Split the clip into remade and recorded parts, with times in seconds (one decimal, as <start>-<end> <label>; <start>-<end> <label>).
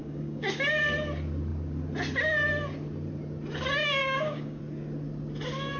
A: 0.0-0.7 remade; 0.7-4.0 recorded; 4.0-4.6 remade; 4.6-5.8 recorded